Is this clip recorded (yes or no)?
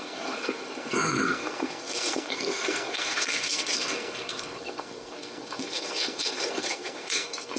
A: no